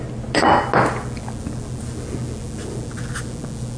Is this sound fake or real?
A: real